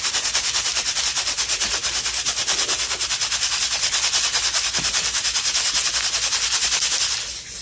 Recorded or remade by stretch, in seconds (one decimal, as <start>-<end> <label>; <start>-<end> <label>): 0.0-7.6 recorded